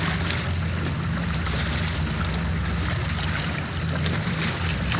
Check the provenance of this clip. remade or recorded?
recorded